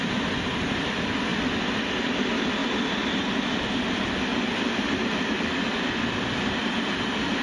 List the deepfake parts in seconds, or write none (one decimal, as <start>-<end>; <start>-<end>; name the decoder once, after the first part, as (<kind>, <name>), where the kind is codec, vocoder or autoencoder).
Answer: 0.0-2.6 (vocoder, BigVGAN v2); 3.2-7.4